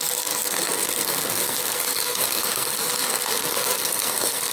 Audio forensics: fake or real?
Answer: fake